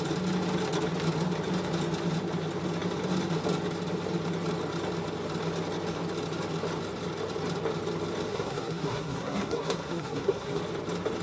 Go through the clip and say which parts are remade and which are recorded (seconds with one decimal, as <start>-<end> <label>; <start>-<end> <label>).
0.0-8.3 recorded; 8.3-10.6 remade; 10.6-11.2 recorded